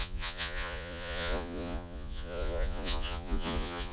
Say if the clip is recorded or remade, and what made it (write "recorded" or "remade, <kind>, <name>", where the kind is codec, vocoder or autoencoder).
remade, vocoder, Vocos